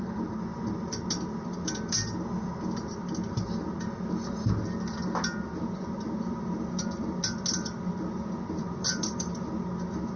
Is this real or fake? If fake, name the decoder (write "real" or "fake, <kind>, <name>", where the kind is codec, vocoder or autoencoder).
real